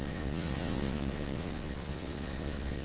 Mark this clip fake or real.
fake